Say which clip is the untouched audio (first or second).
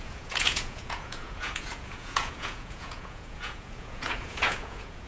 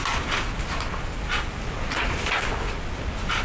second